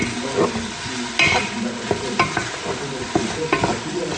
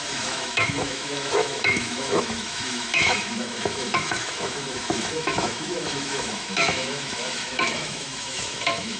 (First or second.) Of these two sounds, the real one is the first